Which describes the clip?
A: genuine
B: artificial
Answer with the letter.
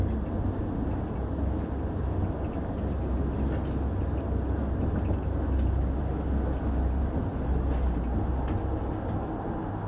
A